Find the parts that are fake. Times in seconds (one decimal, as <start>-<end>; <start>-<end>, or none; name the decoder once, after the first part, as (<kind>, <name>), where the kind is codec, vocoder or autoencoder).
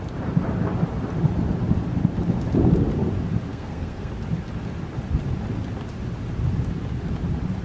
3.5-4.1 (codec, SNAC)